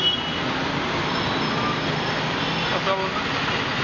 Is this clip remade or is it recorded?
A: recorded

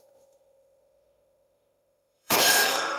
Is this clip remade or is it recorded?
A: remade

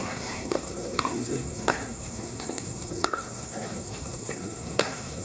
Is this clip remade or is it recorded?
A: remade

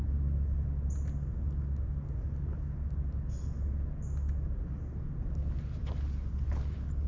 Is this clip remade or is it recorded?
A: recorded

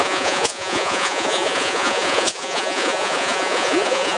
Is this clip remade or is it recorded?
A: remade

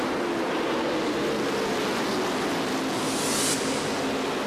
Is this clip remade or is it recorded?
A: recorded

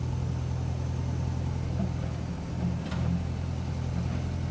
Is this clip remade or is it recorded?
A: recorded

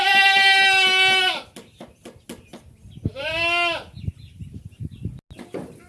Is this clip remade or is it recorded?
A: recorded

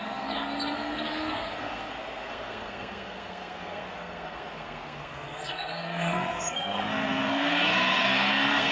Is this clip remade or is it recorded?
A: remade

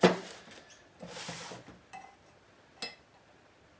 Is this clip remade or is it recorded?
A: recorded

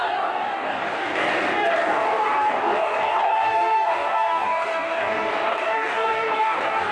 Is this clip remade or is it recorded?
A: remade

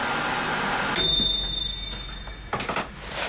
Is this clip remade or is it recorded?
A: recorded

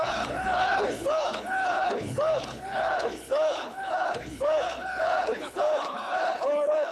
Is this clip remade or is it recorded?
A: remade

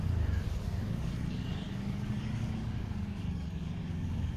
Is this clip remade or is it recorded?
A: remade